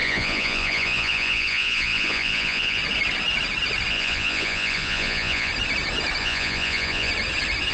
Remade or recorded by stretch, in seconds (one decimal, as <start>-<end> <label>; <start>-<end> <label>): 0.0-2.8 remade; 2.8-3.9 recorded; 3.9-5.5 remade; 5.5-6.2 recorded; 6.2-7.1 remade; 7.1-7.7 recorded